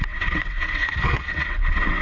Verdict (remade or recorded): remade